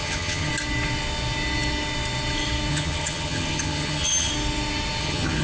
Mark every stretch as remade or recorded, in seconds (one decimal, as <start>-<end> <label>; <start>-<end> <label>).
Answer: 0.0-0.5 remade; 0.5-2.7 recorded; 2.7-4.3 remade; 4.3-5.0 recorded; 5.0-5.4 remade